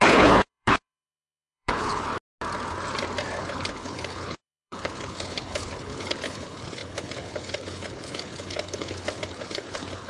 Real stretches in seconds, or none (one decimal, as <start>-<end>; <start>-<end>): 2.1-3.4